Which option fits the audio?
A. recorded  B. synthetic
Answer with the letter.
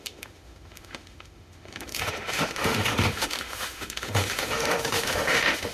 B